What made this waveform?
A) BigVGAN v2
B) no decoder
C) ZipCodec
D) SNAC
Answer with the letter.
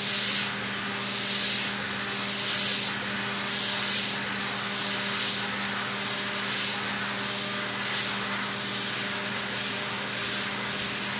B